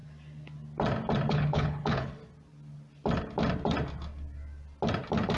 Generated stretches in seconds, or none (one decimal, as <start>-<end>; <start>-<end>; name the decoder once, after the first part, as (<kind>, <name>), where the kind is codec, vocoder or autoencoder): 1.3-2.2 (codec, HILCodec)